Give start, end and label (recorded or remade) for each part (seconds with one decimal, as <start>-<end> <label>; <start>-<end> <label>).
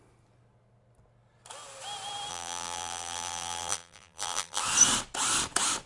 0.0-2.3 recorded; 2.3-4.6 remade; 4.6-5.9 recorded